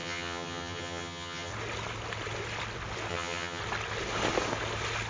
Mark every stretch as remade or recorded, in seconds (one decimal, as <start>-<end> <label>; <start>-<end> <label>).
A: 0.0-1.5 remade; 1.5-3.1 recorded; 3.1-3.6 remade; 3.6-5.1 recorded